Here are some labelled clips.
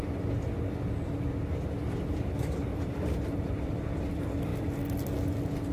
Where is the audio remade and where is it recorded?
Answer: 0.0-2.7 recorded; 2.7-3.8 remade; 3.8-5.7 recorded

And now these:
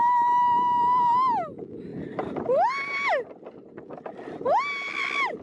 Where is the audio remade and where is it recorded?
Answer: 0.0-5.4 recorded